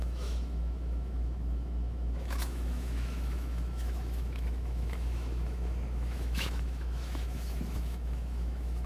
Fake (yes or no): yes